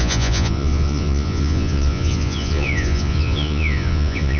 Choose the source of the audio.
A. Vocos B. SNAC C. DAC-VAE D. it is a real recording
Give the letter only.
A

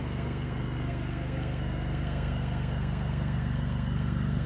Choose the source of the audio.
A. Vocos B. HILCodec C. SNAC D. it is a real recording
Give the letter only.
C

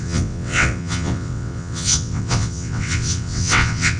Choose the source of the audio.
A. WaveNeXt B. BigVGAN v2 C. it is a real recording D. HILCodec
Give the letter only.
A